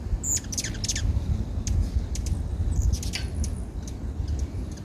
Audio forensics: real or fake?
real